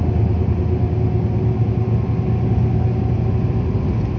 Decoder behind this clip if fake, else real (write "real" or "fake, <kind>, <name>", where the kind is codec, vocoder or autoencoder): real